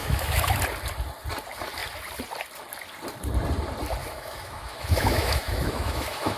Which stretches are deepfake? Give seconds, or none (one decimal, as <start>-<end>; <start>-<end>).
0.0-0.6; 4.0-6.4